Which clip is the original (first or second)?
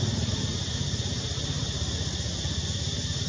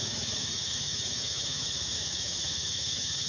first